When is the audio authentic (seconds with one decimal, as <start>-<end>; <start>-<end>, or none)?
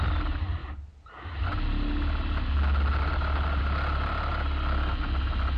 0.0-5.6